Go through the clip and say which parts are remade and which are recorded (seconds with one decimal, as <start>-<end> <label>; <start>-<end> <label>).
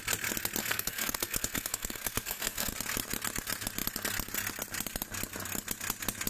0.0-0.6 recorded; 0.6-2.7 remade; 2.7-6.3 recorded